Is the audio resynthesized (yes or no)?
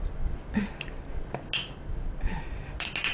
no